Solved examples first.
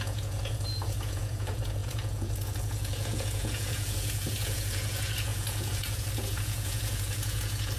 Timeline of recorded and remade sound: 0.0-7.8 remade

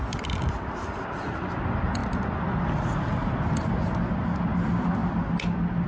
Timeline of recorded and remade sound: 0.0-5.9 recorded

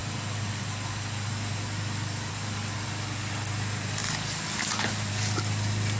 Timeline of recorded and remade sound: 0.0-6.0 recorded

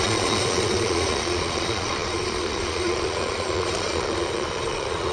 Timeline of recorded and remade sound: 0.0-5.1 remade